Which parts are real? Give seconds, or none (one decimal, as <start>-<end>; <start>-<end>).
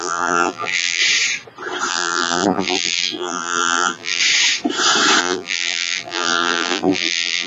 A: 1.0-1.9; 4.2-5.2